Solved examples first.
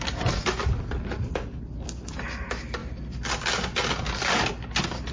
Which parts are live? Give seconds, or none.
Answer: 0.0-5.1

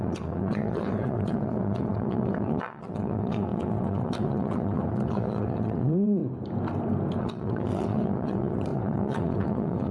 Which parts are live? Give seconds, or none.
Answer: 6.2-7.2

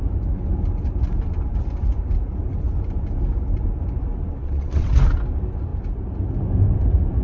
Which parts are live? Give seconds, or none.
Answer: 0.0-4.4; 4.9-7.2

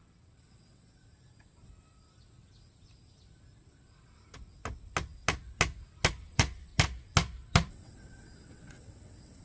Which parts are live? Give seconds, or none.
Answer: 1.0-6.1; 6.7-7.7

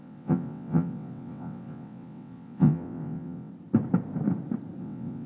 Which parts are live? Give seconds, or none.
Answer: 3.5-4.8

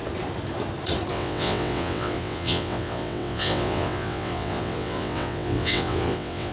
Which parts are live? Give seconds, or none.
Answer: 0.0-1.1

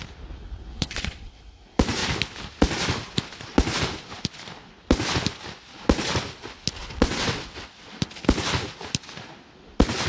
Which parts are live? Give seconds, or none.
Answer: 0.0-0.7; 1.4-6.8; 8.0-10.1